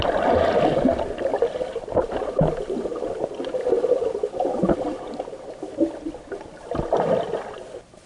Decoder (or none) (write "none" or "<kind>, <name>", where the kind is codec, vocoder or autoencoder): none